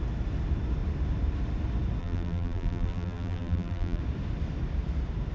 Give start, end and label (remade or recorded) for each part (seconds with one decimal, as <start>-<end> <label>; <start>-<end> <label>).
0.0-2.0 recorded; 2.0-4.0 remade; 4.0-5.3 recorded